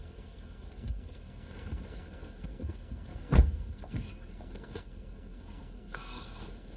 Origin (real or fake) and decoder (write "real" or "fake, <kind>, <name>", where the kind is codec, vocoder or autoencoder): fake, codec, SNAC